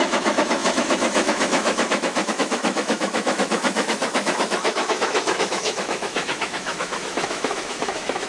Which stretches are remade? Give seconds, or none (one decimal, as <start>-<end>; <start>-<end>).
0.0-8.3